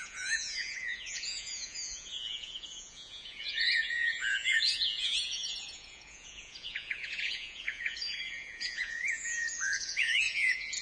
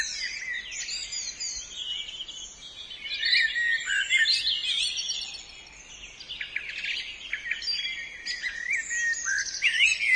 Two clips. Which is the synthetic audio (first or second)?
first